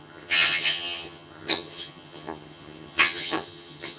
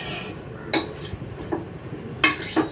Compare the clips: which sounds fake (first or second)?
first